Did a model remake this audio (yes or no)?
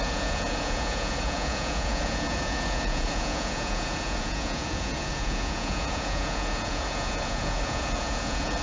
yes